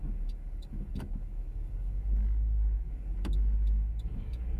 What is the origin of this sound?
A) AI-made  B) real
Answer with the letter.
A